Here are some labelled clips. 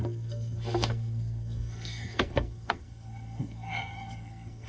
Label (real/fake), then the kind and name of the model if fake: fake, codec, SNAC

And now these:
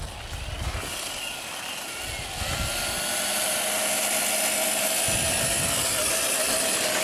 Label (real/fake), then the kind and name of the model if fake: real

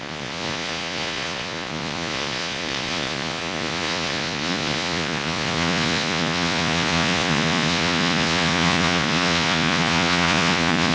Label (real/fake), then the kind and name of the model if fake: fake, vocoder, Vocos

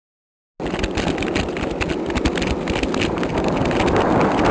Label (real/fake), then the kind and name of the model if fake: real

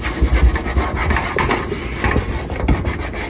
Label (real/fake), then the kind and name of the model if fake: real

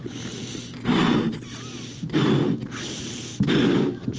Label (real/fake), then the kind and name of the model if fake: real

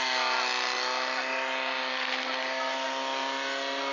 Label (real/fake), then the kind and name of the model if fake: real